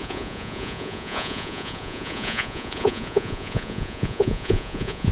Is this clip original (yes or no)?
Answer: no